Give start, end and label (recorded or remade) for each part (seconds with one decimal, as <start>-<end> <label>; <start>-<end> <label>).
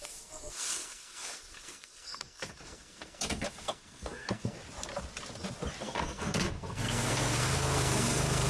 0.0-4.6 remade; 4.6-5.8 recorded; 5.8-8.5 remade